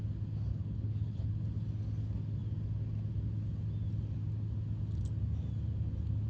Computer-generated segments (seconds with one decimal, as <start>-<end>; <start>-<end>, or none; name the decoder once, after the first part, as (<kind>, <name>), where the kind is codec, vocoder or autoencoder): 0.5-1.4 (codec, HILCodec)